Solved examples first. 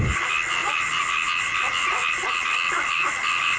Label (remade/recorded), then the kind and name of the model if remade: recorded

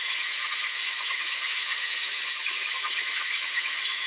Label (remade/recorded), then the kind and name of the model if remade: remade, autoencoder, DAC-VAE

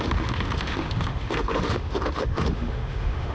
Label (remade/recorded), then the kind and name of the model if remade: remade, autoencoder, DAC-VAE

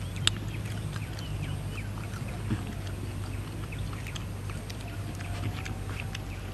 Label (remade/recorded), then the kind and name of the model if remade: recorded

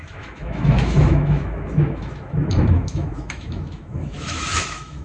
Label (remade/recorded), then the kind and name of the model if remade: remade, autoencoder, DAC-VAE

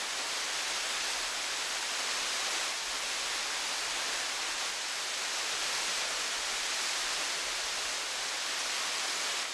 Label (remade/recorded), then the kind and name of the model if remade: recorded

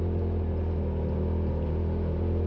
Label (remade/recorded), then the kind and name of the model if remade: recorded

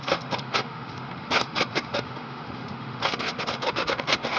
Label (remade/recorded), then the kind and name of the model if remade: remade, autoencoder, DAC-VAE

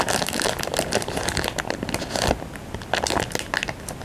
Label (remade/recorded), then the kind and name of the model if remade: recorded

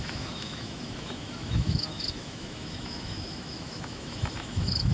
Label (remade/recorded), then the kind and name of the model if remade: remade, autoencoder, DAC-VAE